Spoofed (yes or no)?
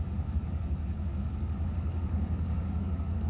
yes